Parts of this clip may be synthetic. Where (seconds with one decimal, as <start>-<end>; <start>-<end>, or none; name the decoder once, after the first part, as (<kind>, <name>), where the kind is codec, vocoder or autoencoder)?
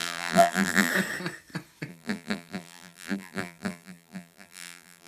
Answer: 0.0-0.9 (vocoder, BigVGAN v2); 1.9-5.1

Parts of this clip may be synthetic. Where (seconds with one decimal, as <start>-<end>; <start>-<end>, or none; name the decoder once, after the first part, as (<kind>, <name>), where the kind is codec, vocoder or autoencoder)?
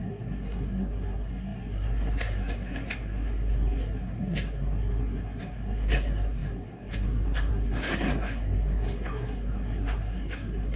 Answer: 0.0-10.8 (codec, SNAC)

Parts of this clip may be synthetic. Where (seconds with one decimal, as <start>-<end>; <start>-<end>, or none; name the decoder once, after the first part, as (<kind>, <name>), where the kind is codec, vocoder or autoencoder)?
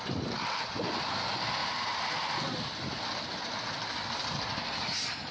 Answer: none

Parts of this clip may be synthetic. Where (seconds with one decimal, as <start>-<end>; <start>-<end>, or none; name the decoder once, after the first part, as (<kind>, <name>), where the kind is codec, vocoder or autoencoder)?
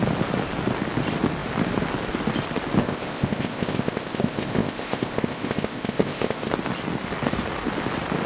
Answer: 2.8-6.5 (codec, ZipCodec)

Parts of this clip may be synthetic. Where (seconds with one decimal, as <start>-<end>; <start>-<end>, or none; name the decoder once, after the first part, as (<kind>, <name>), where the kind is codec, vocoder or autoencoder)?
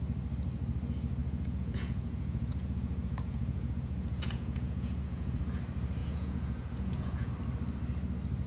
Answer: 1.2-5.4 (vocoder, Vocos); 6.0-7.3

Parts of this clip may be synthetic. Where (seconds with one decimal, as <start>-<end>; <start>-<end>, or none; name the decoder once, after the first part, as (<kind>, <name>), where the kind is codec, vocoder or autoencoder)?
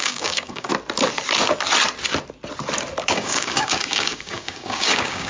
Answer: 0.0-0.7 (codec, DAC); 3.1-5.3